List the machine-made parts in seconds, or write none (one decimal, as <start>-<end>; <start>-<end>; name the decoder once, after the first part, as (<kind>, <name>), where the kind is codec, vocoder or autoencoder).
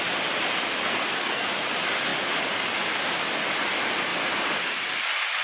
0.8-1.5 (codec, SNAC)